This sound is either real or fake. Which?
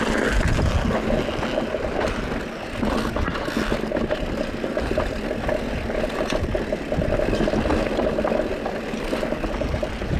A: real